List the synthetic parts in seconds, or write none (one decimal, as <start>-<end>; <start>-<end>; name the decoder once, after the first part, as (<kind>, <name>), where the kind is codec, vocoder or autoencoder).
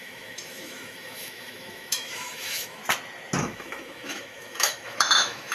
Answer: 0.0-2.8 (autoencoder, DAC-VAE); 3.4-5.5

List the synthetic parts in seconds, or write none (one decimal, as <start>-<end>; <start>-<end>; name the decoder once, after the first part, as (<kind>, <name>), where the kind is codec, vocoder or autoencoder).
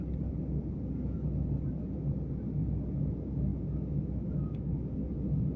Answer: 3.5-5.1 (autoencoder, DAC-VAE)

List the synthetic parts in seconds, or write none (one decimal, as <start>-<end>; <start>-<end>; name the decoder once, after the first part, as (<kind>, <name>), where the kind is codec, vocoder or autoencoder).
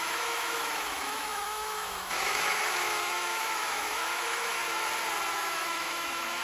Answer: 0.0-4.6 (autoencoder, DAC-VAE); 5.3-6.4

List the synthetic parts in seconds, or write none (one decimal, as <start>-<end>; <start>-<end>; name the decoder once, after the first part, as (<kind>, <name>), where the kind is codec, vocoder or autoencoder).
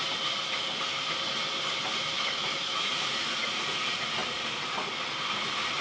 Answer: 2.1-2.9 (autoencoder, DAC-VAE)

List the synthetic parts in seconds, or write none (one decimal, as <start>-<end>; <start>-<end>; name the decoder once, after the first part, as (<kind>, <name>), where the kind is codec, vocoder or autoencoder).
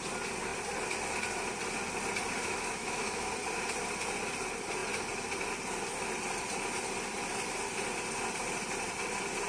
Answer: 2.4-3.3 (autoencoder, DAC-VAE)